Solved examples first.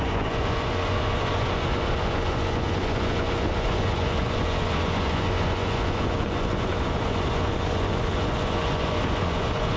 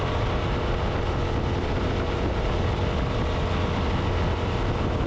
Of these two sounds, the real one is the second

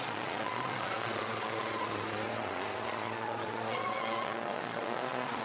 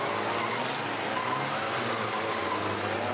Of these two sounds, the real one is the second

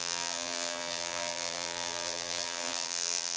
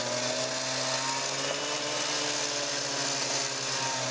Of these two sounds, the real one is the second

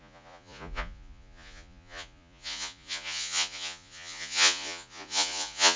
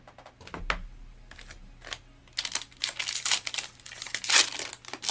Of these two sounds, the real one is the second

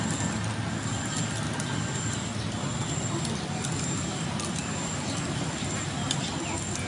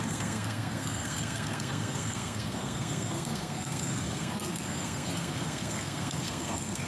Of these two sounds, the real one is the first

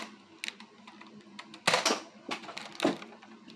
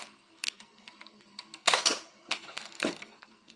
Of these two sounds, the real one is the first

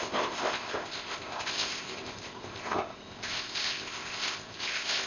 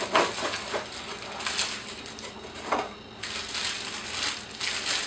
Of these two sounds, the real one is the second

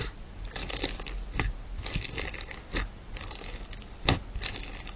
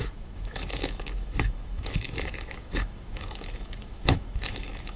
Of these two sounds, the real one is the first